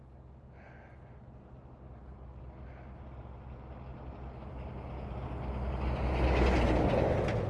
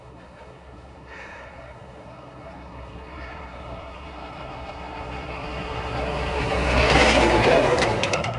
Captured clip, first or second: first